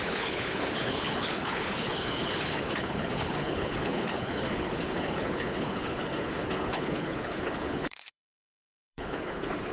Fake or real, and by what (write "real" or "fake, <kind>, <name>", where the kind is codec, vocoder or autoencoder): fake, codec, HILCodec